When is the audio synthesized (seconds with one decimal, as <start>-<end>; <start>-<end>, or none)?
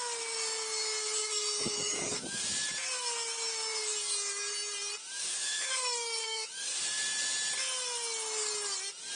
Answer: 1.2-2.4; 5.0-6.8